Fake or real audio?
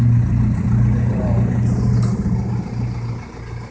real